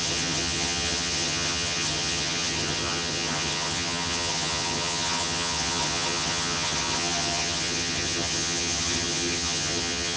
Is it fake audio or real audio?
fake